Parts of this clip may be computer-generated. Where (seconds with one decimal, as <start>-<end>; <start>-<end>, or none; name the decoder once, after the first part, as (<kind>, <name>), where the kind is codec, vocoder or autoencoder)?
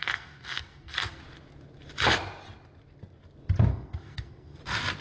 0.0-1.2 (codec, SNAC); 3.7-4.6